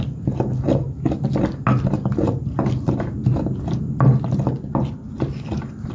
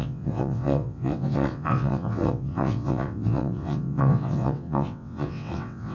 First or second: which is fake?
second